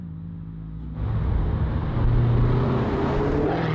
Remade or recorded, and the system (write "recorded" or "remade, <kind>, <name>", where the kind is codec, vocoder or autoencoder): recorded